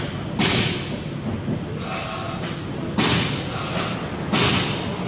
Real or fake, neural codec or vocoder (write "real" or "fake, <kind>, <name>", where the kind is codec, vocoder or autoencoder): real